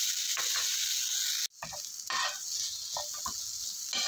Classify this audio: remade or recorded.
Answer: recorded